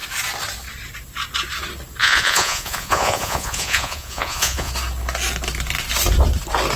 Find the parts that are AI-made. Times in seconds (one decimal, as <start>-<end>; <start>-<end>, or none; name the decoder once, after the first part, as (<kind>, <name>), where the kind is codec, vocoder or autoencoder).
2.0-4.7 (vocoder, Vocos)